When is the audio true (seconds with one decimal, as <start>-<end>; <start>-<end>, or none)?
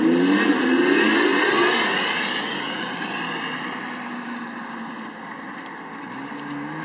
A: 0.0-6.8